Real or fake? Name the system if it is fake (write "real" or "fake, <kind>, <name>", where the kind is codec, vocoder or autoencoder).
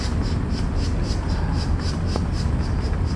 real